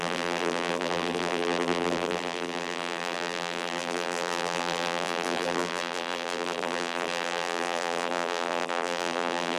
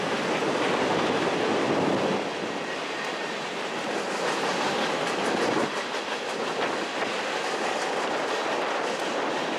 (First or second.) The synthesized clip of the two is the first